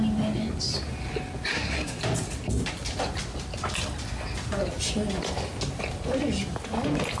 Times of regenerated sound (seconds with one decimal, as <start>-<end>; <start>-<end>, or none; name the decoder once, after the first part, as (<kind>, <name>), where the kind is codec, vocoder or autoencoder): 1.5-2.0 (codec, SNAC)